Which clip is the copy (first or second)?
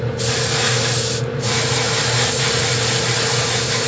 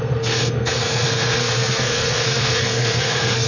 second